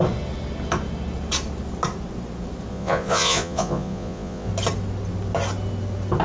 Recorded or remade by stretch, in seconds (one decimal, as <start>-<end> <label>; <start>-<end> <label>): 0.0-2.7 recorded; 2.7-4.5 remade; 4.5-6.2 recorded